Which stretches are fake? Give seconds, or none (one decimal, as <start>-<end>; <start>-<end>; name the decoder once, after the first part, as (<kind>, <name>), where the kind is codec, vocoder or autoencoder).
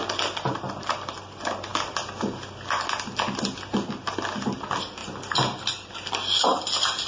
none